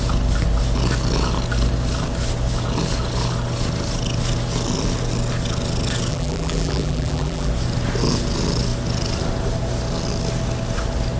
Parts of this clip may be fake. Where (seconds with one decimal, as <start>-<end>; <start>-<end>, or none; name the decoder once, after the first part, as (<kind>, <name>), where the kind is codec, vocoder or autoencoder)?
6.1-7.5 (vocoder, BigVGAN v2)